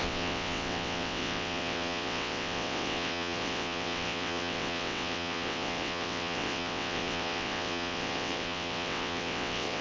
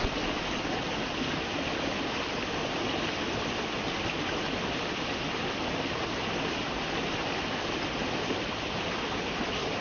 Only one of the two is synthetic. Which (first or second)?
first